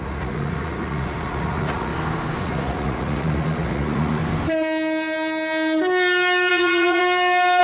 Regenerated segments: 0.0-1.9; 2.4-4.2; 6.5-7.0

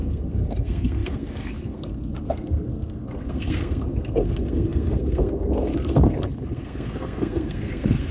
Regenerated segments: 0.0-8.1

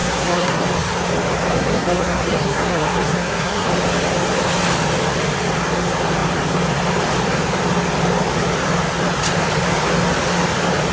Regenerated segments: 0.0-0.6; 1.5-3.7